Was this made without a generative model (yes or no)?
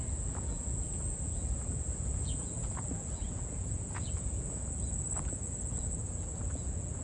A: no